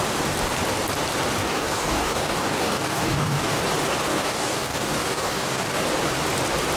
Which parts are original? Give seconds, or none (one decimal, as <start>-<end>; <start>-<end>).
0.0-1.4; 3.6-4.1; 5.8-6.8